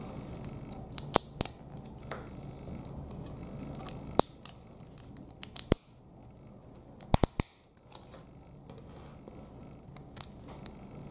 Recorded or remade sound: recorded